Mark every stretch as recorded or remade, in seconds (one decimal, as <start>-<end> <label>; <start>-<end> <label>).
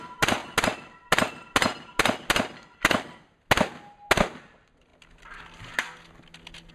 0.0-6.7 recorded